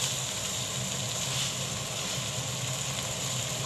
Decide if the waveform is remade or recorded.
recorded